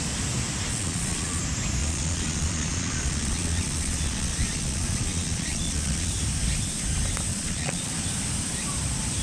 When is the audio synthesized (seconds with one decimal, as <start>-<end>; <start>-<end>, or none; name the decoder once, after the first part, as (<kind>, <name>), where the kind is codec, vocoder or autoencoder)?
0.7-1.4 (vocoder, Vocos); 1.8-6.1; 7.3-7.9